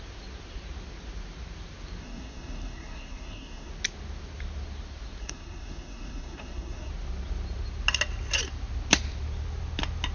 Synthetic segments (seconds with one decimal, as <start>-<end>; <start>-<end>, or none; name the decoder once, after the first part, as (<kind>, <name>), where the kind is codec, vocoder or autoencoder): 2.0-3.7 (codec, SNAC); 5.2-6.9